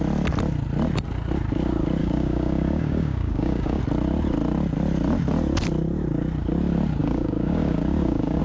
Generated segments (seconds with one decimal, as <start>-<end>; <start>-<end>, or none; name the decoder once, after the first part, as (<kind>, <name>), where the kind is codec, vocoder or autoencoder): 2.0-3.8 (codec, DAC); 7.0-8.4